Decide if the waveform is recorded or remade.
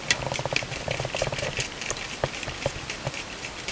recorded